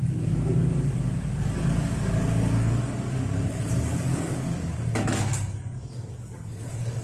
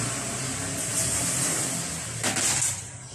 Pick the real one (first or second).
second